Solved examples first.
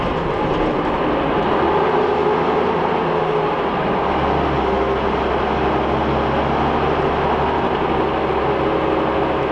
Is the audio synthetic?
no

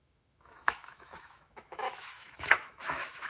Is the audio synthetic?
yes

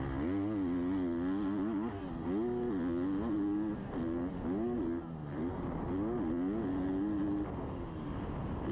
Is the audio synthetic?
no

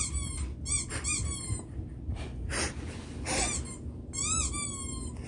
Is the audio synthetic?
no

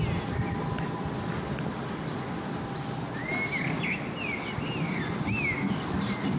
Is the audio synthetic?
no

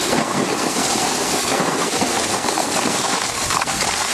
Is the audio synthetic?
yes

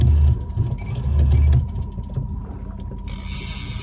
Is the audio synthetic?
no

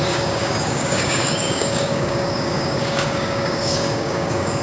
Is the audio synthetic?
yes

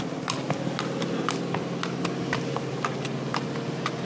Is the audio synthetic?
no